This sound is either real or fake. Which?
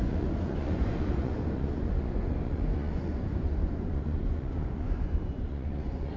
fake